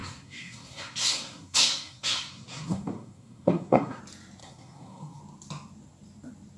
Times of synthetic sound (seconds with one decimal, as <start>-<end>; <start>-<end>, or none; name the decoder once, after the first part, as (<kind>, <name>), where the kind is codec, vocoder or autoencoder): 0.0-4.0 (codec, SNAC); 4.4-5.2